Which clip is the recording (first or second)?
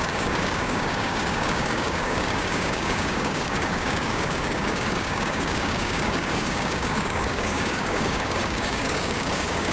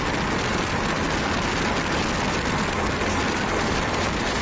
second